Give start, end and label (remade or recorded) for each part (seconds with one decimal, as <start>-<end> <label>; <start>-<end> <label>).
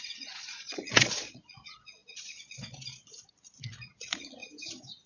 0.0-4.4 remade; 4.4-5.1 recorded